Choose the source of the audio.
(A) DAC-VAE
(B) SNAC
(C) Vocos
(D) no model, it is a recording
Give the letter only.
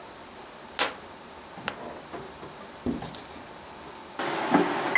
D